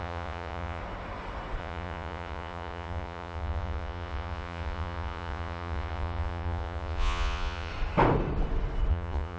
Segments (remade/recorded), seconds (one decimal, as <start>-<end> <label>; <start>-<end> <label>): 0.0-0.8 remade; 0.8-1.6 recorded; 1.6-7.7 remade; 7.7-8.9 recorded; 8.9-9.4 remade